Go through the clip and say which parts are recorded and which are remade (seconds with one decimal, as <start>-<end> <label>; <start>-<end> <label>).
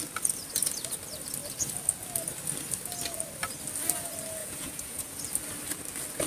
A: 0.0-4.4 recorded; 4.4-5.2 remade; 5.2-6.3 recorded